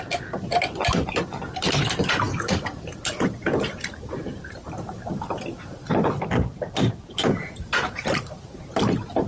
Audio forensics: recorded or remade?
remade